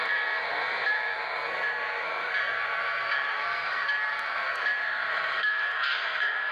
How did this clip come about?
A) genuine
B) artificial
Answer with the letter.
B